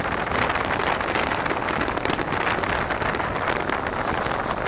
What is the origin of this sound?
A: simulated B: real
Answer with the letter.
B